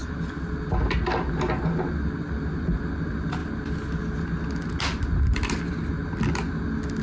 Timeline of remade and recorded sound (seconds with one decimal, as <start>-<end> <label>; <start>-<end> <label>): 0.0-7.0 recorded